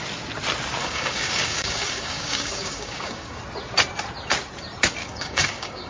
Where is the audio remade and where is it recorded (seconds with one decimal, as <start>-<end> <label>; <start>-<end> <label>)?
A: 0.0-0.8 recorded; 0.8-3.4 remade; 3.4-5.0 recorded; 5.0-5.9 remade